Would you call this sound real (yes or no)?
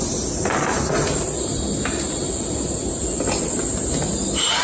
yes